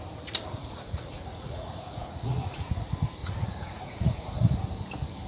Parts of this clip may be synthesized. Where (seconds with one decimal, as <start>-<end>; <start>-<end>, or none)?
0.6-2.7; 3.2-4.5